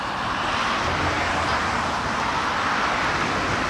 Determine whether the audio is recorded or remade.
recorded